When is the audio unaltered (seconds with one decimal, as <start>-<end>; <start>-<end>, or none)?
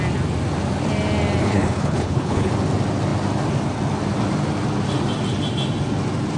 0.0-1.4; 2.5-6.4